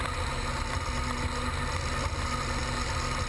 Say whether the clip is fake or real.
real